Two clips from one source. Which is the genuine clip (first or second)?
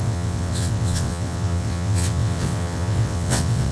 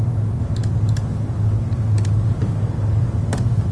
second